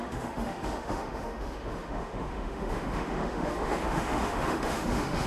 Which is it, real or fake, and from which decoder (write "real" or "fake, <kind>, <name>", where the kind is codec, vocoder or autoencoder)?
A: fake, autoencoder, DAC-VAE